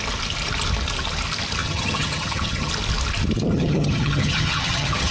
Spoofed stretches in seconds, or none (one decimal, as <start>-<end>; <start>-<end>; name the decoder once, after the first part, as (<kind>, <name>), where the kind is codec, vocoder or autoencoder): 1.6-2.7 (vocoder, HiFi-GAN); 3.5-5.1